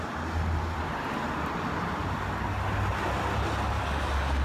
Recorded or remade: recorded